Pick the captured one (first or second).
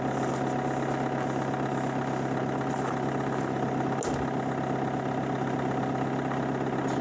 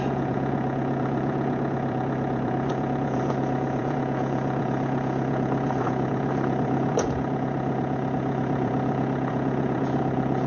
first